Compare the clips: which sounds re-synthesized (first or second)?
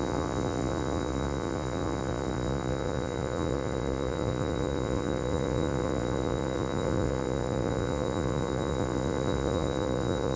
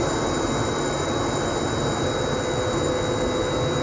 first